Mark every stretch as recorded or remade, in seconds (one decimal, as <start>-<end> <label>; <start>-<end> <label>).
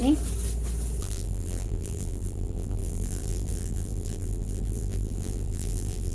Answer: 0.0-1.0 recorded; 1.0-6.1 remade